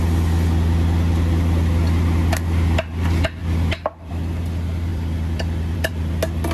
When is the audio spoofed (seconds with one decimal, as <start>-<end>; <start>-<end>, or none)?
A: 3.4-4.1; 4.9-5.9